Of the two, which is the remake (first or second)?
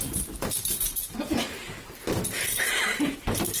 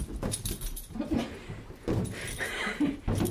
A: first